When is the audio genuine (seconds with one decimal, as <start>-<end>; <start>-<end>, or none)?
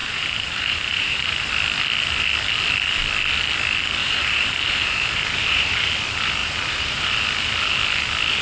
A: 1.3-4.0; 5.9-6.4; 7.0-8.4